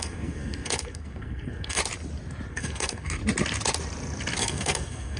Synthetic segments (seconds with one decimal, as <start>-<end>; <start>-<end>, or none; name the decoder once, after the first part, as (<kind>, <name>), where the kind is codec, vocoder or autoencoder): 0.0-1.8 (codec, SNAC); 2.5-3.2; 4.4-5.2

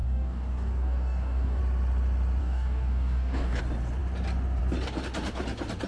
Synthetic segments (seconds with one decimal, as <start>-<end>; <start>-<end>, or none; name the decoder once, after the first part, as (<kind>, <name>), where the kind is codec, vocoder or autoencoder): 0.0-1.6 (codec, DAC); 2.4-3.6